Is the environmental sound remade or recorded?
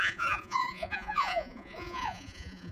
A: remade